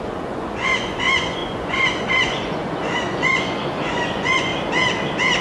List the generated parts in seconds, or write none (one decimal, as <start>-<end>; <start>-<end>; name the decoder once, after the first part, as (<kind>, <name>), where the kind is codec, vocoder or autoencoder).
0.0-4.5 (vocoder, Vocos)